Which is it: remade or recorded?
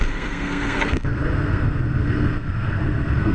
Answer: remade